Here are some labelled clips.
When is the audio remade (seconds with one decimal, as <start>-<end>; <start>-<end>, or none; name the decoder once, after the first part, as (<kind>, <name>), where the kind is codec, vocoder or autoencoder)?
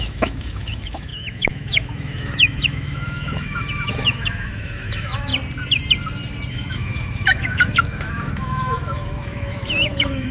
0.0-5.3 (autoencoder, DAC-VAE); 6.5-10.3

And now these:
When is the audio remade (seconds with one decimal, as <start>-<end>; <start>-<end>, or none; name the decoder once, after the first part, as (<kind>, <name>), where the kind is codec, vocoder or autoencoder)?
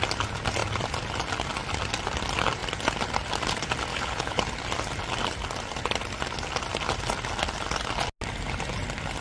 3.9-4.4 (codec, HILCodec)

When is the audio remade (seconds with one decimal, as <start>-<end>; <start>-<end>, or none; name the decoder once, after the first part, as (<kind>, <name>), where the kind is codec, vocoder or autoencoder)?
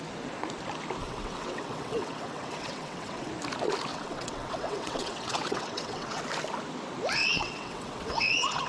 1.0-3.3 (vocoder, WaveNeXt); 3.9-6.2; 7.2-8.7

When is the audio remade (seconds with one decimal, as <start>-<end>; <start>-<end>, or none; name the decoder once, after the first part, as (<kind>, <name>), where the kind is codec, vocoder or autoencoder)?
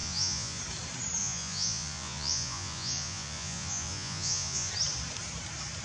0.0-0.6 (vocoder, Vocos); 1.2-4.7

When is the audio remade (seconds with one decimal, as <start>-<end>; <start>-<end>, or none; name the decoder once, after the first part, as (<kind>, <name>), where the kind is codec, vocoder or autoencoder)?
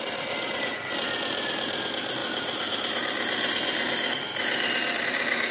none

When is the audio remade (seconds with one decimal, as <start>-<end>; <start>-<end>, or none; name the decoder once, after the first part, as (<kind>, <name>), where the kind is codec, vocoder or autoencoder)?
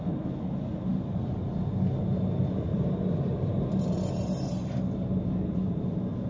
0.9-1.6 (vocoder, BigVGAN v2); 2.7-5.8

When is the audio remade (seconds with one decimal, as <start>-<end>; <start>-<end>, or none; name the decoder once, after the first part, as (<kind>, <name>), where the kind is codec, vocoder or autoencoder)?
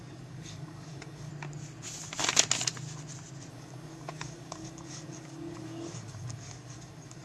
0.0-1.3 (codec, DAC); 3.5-7.2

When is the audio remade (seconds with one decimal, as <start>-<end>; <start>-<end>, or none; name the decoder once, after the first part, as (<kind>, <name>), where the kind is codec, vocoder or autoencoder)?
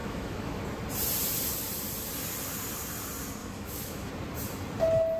0.0-0.6 (autoencoder, DAC-VAE); 3.4-4.1